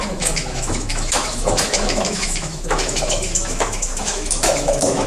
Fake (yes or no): yes